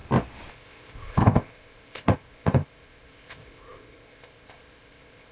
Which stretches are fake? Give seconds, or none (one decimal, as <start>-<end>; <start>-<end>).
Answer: 0.5-5.3